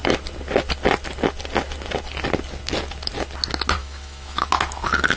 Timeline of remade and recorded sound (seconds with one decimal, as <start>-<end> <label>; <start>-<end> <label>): 0.0-3.8 recorded; 3.8-4.5 remade; 4.5-5.2 recorded

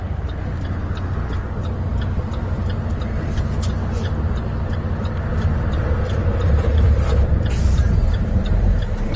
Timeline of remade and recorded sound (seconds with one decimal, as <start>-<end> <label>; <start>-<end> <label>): 0.0-6.7 recorded; 6.7-9.2 remade

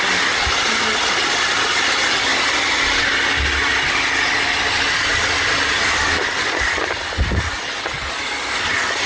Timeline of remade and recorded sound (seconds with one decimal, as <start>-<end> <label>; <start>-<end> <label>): 0.0-9.1 recorded